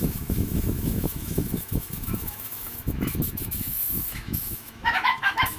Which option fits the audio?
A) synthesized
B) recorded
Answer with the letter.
A